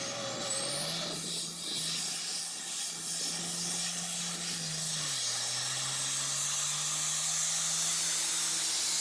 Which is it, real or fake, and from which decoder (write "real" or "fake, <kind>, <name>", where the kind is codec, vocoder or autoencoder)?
real